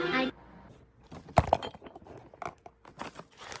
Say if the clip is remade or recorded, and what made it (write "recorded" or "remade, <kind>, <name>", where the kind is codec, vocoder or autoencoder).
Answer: recorded